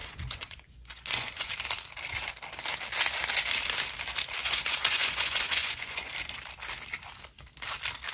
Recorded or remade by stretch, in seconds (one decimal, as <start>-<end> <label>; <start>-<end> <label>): 0.0-1.5 remade; 1.5-4.4 recorded; 4.4-6.1 remade; 6.1-8.1 recorded